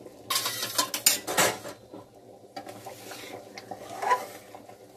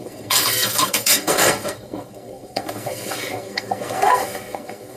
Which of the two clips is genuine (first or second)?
first